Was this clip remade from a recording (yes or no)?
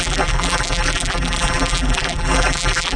yes